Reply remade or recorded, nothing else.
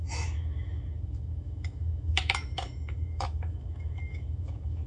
remade